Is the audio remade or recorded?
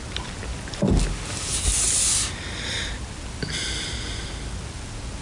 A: recorded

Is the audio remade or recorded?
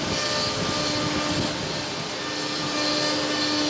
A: recorded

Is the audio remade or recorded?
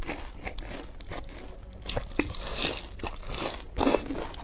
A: recorded